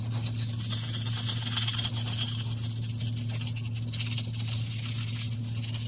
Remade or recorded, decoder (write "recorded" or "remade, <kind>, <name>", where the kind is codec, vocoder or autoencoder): recorded